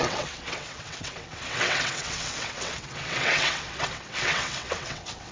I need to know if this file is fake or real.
fake